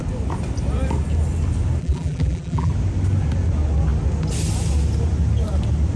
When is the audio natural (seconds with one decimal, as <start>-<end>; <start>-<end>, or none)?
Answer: 0.0-1.8; 2.7-6.0